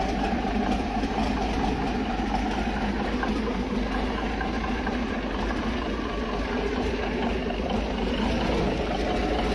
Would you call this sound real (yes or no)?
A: yes